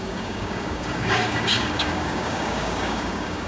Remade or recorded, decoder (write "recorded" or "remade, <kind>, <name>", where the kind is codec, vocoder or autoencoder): remade, codec, DAC